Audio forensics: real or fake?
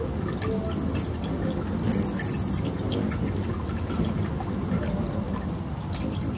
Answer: real